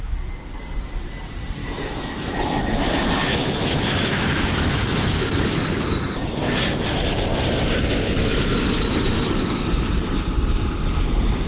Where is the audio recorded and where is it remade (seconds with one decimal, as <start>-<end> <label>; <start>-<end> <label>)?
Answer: 0.0-1.6 recorded; 1.6-5.9 remade; 5.9-11.5 recorded